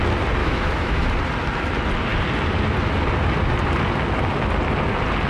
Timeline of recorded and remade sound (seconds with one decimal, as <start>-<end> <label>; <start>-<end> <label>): 0.0-0.4 recorded; 0.4-1.1 remade; 1.1-5.3 recorded